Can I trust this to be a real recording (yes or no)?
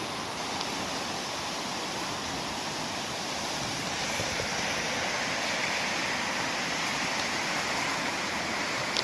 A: yes